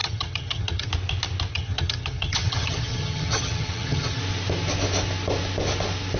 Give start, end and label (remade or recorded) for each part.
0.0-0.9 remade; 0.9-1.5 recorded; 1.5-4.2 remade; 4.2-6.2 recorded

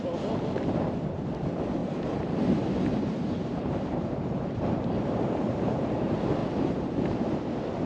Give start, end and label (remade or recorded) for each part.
0.0-1.8 recorded; 1.8-5.9 remade; 5.9-6.4 recorded; 6.4-7.2 remade; 7.2-7.9 recorded

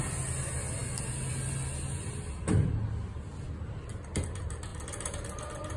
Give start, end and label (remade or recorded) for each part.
0.0-5.8 recorded

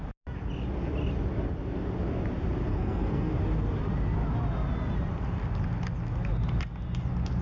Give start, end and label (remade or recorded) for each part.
0.0-2.7 recorded; 2.7-3.3 remade; 3.3-7.4 recorded

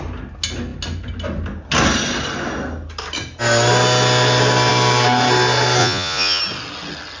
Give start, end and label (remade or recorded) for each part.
0.0-5.8 recorded; 5.8-6.4 remade; 6.4-7.2 recorded

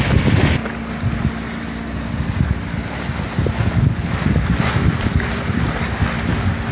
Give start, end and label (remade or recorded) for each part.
0.0-4.8 recorded; 4.8-5.6 remade; 5.6-6.7 recorded

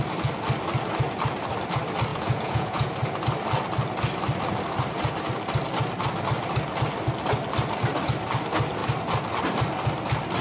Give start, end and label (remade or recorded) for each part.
0.0-2.1 recorded; 2.1-2.9 remade; 2.9-10.4 recorded

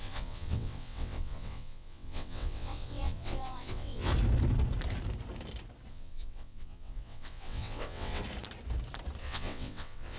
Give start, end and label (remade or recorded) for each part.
0.0-4.1 remade; 4.1-5.9 recorded; 5.9-8.2 remade; 8.2-9.2 recorded; 9.2-10.2 remade